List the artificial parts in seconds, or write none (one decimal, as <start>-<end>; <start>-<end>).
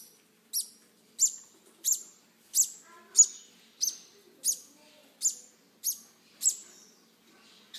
none